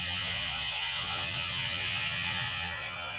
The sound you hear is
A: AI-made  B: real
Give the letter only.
A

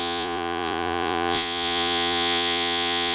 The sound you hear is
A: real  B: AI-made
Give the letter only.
B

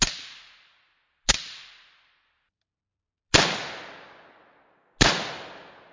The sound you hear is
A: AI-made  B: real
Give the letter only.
B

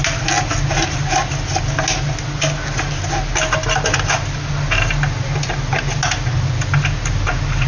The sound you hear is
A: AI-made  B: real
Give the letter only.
B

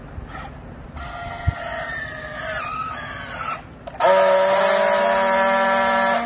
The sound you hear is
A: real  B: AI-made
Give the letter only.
A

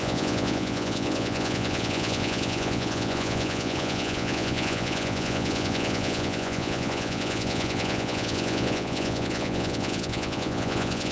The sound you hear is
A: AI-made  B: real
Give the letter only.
A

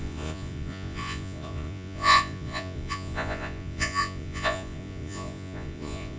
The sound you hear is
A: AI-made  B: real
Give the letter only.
A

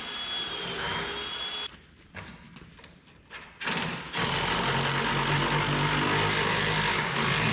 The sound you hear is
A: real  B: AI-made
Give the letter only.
A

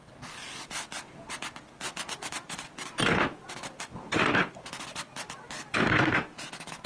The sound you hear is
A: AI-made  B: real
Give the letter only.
B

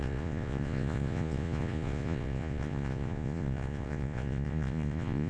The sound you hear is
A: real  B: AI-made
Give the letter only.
B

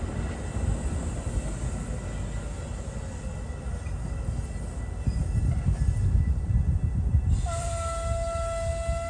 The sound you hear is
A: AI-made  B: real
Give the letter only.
B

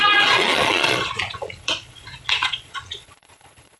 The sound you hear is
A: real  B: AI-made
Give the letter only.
B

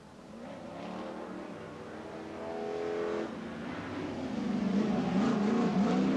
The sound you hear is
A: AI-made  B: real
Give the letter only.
B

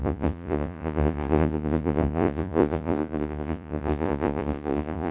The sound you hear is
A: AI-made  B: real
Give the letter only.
A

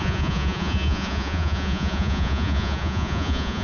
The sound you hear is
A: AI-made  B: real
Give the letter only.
A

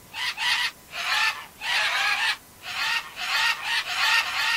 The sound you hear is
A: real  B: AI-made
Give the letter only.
A